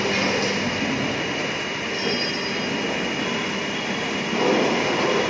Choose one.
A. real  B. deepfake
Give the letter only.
A